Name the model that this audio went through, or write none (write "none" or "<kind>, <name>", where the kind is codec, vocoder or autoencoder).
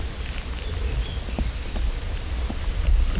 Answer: none